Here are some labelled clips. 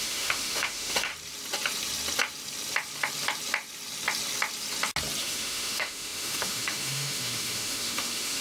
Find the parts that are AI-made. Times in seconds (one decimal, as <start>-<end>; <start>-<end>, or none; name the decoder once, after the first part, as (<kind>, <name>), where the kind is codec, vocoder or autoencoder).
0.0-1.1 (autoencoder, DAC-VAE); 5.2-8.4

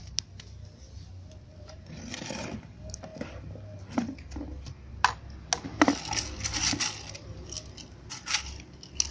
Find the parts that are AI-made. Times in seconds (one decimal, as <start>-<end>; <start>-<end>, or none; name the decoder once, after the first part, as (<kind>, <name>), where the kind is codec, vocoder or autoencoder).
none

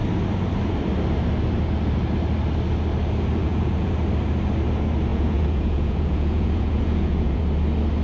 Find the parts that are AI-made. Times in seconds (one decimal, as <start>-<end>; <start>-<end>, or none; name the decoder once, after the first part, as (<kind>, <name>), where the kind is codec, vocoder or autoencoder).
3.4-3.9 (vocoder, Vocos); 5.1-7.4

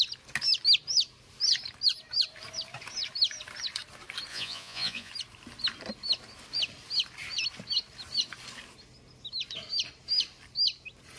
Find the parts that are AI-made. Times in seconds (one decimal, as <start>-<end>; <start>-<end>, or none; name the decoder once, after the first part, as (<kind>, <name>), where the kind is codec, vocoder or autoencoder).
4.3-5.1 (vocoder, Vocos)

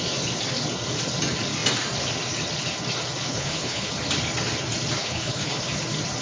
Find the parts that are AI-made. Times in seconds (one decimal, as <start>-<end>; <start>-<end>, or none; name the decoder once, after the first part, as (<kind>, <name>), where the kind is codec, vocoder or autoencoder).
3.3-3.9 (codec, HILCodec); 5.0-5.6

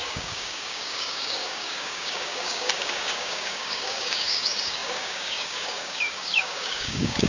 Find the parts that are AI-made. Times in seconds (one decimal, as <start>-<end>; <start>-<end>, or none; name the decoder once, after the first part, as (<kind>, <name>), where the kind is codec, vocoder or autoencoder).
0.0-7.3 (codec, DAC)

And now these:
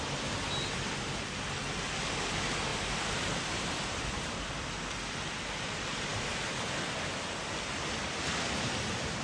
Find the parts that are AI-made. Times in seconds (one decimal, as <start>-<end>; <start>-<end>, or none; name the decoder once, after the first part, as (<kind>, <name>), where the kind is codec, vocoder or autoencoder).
2.7-4.4 (vocoder, BigVGAN v2)

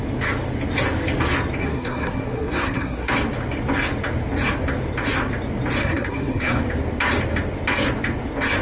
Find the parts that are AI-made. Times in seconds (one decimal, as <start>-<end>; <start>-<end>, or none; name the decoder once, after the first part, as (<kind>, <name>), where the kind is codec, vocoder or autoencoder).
1.6-3.1 (codec, SNAC); 5.8-6.6